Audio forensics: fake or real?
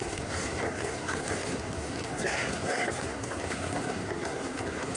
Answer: fake